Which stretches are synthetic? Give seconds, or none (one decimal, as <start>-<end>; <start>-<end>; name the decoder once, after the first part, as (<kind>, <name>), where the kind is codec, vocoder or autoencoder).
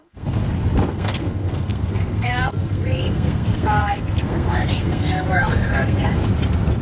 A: 0.0-0.4 (codec, SNAC); 0.9-6.2